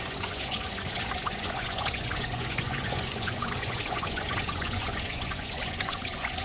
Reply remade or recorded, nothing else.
remade